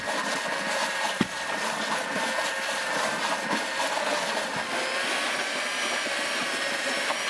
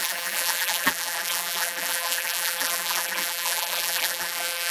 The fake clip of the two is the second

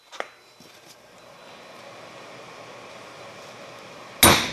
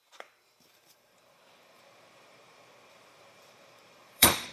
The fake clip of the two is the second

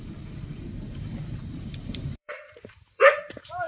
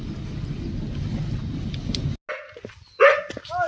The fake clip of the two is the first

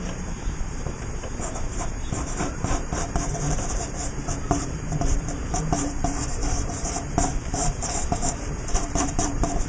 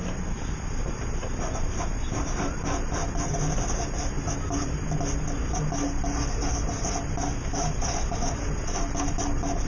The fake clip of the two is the first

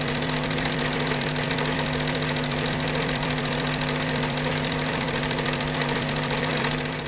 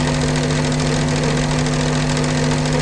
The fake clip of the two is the first